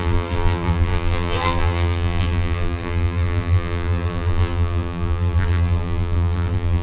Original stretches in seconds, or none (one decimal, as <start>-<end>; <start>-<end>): none